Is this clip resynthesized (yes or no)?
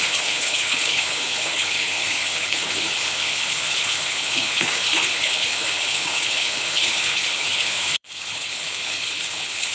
yes